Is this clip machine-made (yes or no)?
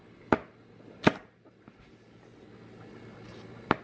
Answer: no